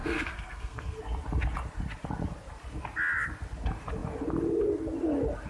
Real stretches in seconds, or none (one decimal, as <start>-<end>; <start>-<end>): 1.0-5.5